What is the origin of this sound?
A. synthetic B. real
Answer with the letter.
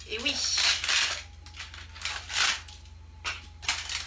B